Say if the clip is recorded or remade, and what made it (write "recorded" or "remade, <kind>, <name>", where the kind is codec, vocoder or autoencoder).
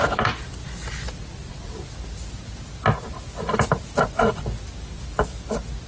recorded